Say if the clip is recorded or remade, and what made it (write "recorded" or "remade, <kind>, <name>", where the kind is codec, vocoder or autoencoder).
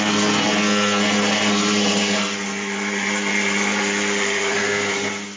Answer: recorded